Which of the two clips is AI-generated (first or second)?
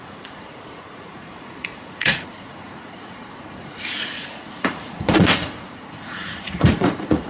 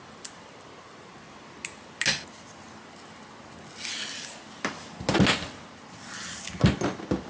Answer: first